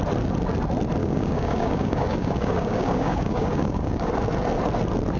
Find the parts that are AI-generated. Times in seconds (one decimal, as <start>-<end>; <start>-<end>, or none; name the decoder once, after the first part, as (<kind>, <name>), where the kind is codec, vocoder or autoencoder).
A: 1.0-4.1 (codec, DAC)